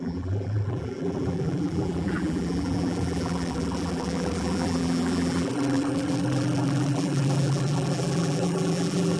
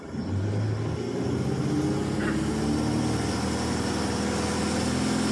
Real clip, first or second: second